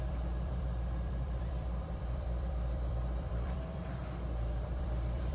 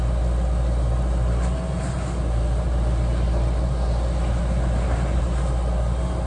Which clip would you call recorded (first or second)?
second